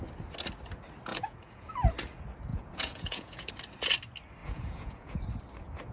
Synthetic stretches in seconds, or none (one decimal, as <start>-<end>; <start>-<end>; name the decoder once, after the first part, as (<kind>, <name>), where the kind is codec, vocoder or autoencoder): 1.1-1.7 (vocoder, Vocos); 2.5-3.5; 4.4-5.3

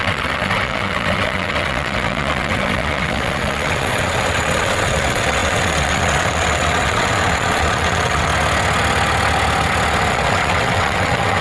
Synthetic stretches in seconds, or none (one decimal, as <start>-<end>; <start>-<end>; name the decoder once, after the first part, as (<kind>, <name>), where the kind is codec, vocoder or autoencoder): 0.0-8.3 (vocoder, WaveNeXt); 10.1-11.4

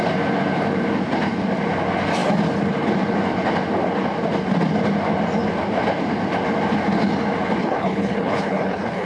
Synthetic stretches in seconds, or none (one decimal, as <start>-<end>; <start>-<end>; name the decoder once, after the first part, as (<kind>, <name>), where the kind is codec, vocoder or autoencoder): 7.6-9.1 (codec, HILCodec)

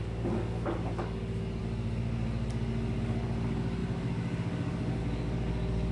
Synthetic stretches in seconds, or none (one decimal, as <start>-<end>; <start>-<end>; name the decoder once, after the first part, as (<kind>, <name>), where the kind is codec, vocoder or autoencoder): 0.0-1.6 (codec, DAC); 3.0-5.9

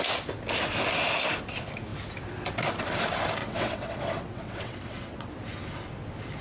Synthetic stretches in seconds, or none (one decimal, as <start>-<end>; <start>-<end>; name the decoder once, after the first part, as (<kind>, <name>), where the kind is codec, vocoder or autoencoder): 3.4-5.3 (vocoder, WaveNeXt)

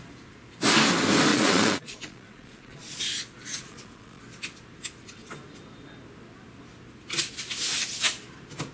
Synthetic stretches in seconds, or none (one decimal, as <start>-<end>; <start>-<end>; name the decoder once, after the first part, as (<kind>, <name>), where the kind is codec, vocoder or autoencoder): 1.3-3.0 (vocoder, Vocos); 3.5-4.2